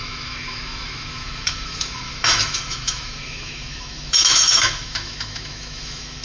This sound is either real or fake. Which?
fake